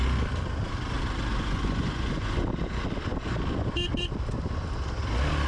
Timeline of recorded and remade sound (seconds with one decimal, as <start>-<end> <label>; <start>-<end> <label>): 0.0-1.3 recorded; 1.3-2.4 remade; 2.4-5.5 recorded